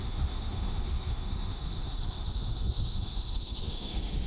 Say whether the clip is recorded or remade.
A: remade